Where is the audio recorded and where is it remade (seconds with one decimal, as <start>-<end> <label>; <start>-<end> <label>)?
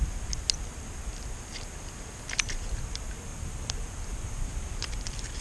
0.0-3.3 recorded; 3.3-4.7 remade; 4.7-5.4 recorded